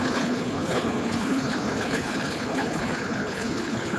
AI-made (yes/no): yes